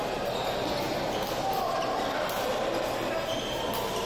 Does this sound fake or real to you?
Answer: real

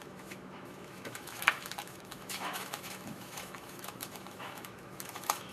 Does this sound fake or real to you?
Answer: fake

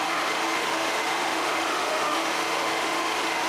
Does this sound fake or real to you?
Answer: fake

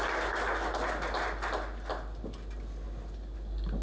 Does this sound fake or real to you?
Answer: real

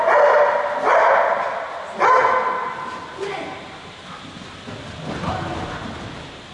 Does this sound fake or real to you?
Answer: real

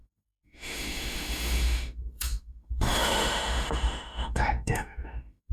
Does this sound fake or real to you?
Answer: fake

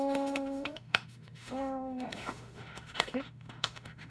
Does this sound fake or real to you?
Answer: fake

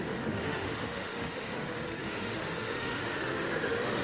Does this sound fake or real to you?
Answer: fake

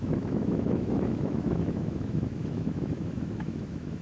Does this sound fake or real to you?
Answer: fake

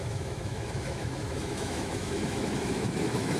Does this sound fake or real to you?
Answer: fake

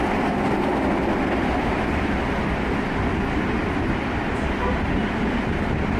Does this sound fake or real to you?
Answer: real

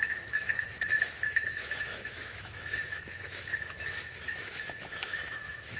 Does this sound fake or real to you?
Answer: fake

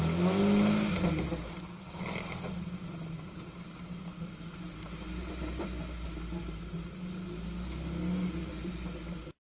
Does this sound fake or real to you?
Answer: real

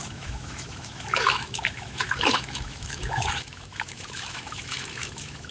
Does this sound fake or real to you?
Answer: fake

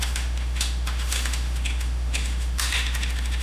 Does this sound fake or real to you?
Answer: fake